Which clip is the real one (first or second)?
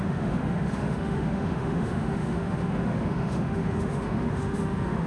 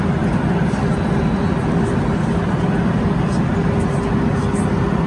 second